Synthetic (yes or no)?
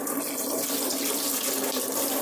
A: no